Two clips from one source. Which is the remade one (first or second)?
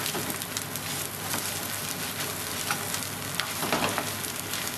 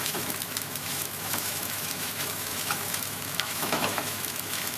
second